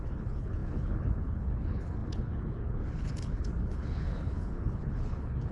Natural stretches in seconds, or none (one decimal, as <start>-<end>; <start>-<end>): none